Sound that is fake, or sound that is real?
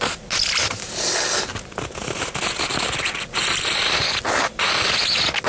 real